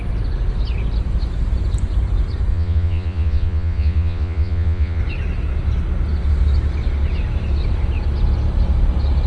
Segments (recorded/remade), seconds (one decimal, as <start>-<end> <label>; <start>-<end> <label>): 0.0-2.5 recorded; 2.5-5.0 remade; 5.0-9.3 recorded